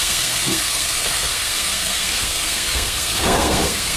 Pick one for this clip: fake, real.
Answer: fake